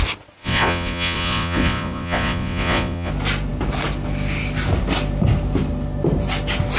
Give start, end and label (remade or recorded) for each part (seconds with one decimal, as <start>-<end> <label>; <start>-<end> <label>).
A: 0.0-0.4 recorded; 0.4-3.1 remade; 3.1-6.8 recorded